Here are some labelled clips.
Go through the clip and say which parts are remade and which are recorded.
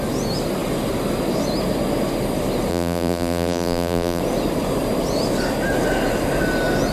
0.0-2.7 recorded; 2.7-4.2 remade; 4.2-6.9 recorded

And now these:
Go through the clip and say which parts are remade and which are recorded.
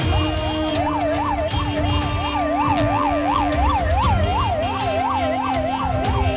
0.0-2.7 recorded; 2.7-3.5 remade; 3.5-6.4 recorded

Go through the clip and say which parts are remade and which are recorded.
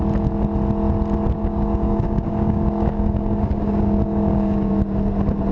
0.0-1.4 recorded; 1.4-4.7 remade; 4.7-5.5 recorded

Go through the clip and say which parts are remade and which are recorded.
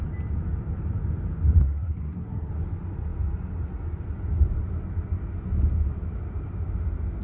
0.0-1.6 recorded; 1.6-2.5 remade; 2.5-7.2 recorded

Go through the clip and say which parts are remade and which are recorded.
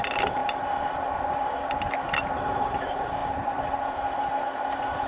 0.0-3.2 recorded; 3.2-4.0 remade; 4.0-5.1 recorded